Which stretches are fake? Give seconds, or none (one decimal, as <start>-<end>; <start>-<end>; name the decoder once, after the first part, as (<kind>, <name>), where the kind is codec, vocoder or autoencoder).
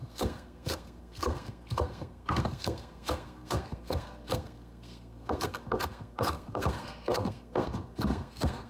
0.0-8.7 (codec, SNAC)